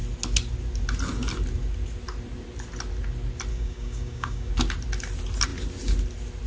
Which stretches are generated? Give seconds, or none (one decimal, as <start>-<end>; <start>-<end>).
3.5-4.5